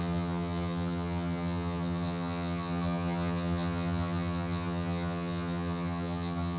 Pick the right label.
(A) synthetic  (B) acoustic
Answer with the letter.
A